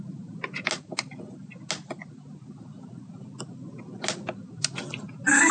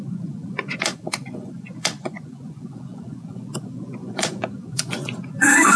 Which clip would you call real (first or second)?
first